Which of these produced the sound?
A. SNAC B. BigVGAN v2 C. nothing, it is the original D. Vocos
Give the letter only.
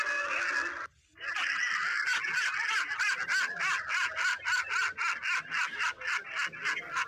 C